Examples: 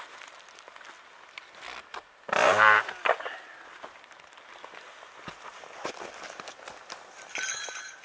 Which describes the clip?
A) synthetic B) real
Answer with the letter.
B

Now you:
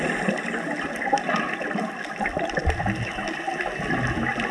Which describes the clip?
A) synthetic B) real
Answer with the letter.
B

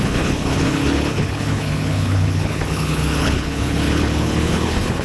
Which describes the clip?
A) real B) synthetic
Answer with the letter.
B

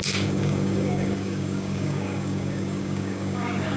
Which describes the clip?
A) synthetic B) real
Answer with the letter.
A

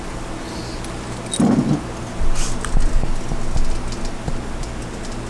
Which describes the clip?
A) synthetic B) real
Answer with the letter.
B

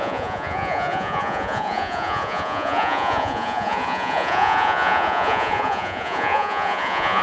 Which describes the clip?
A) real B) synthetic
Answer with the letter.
B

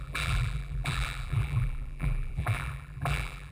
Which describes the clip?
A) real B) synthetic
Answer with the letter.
B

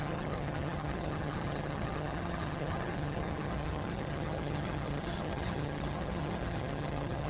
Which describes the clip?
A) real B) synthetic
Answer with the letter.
B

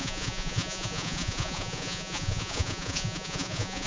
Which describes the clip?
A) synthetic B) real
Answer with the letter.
A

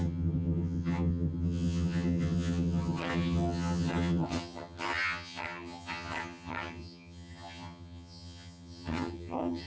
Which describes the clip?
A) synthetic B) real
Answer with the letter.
A